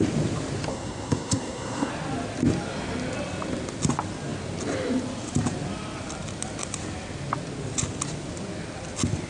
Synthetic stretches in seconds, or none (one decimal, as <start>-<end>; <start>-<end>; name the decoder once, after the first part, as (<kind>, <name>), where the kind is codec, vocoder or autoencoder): 0.7-1.9 (codec, SNAC)